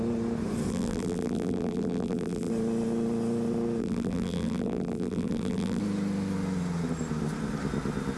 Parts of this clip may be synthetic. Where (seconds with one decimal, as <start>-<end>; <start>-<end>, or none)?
0.7-2.5; 3.8-5.8